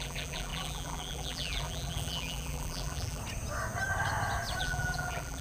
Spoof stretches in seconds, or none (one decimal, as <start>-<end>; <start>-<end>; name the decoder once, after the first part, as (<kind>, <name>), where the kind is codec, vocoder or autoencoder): 0.0-3.2 (vocoder, BigVGAN v2); 4.6-5.4